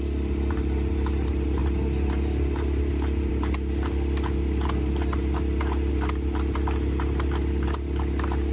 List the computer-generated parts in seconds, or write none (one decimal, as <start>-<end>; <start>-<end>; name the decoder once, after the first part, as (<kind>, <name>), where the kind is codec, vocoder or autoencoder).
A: none